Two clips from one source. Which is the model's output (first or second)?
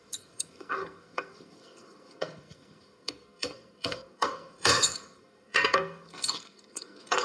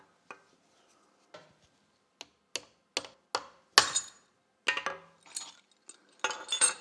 first